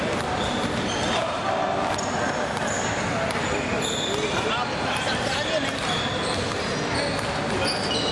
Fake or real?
real